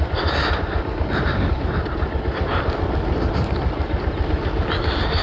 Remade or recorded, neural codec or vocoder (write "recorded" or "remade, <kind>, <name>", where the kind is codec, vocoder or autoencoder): recorded